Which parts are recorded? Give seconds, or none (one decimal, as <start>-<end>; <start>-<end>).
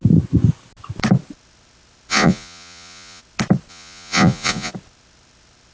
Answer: 0.0-2.1; 3.2-3.7; 4.7-5.7